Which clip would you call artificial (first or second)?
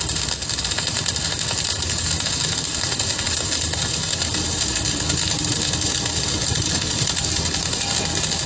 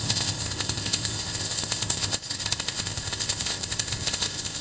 second